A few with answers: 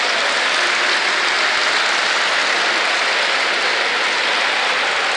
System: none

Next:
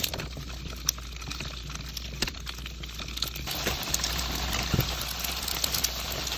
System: none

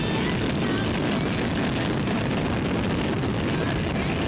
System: none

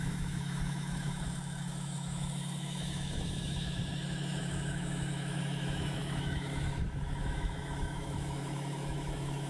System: autoencoder, DAC-VAE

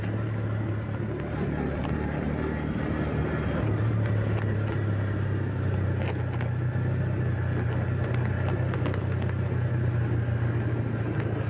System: none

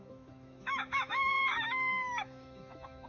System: autoencoder, DAC-VAE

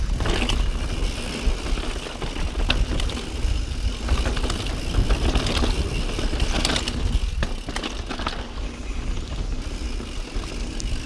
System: none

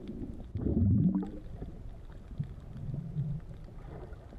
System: none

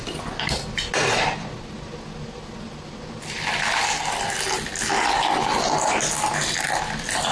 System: none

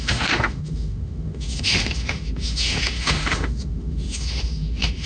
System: autoencoder, DAC-VAE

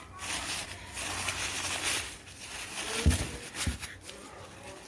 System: none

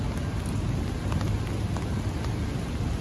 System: none